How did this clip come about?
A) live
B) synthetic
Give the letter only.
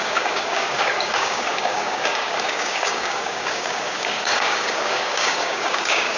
B